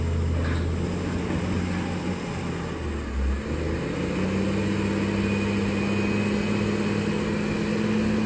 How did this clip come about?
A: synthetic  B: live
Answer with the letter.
B